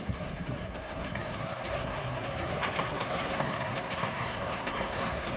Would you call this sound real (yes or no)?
no